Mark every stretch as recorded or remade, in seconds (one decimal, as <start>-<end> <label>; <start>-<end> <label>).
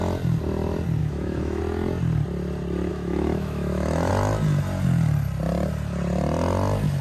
0.0-1.0 recorded; 1.0-1.6 remade; 1.6-2.9 recorded; 2.9-4.1 remade; 4.1-7.0 recorded